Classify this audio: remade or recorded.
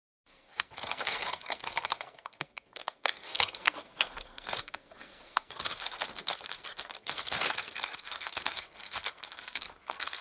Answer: remade